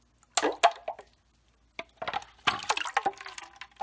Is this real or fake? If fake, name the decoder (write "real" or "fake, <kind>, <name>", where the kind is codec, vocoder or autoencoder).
real